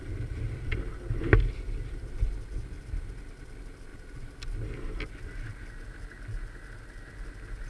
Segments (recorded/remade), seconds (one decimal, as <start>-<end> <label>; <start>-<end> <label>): 0.0-3.9 recorded; 3.9-4.5 remade; 4.5-7.7 recorded